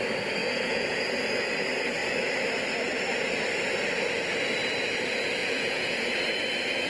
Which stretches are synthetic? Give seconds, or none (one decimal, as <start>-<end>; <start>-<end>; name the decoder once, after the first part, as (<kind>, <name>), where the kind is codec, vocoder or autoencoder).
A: 0.4-1.0 (vocoder, Vocos); 5.4-6.1